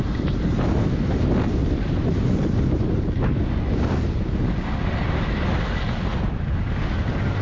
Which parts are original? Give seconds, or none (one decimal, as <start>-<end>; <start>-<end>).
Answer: 0.0-7.4